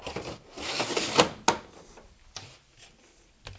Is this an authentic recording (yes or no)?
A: yes